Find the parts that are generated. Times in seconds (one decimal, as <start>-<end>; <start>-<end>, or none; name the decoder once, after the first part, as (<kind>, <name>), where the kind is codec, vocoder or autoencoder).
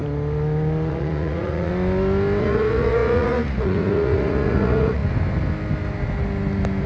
0.9-1.7 (vocoder, Vocos); 2.4-5.0